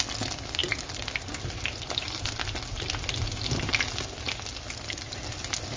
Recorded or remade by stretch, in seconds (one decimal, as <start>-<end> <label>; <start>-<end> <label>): 0.0-0.6 recorded; 0.6-2.3 remade; 2.3-5.8 recorded